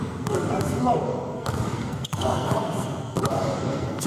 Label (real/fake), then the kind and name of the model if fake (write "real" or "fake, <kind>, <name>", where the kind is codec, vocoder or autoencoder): fake, codec, SNAC